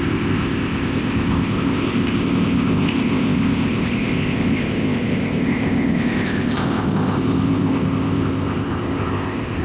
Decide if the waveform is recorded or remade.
remade